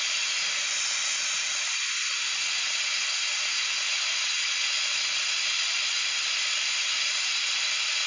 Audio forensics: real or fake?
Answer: real